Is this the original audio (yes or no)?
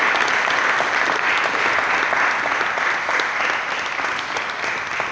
yes